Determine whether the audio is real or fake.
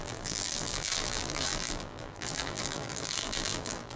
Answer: fake